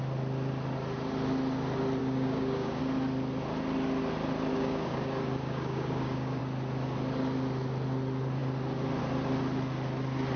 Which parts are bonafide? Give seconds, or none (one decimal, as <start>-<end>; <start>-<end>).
0.0-2.0; 2.8-4.5; 6.4-10.4